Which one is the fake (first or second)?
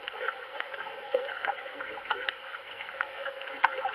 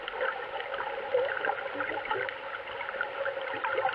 first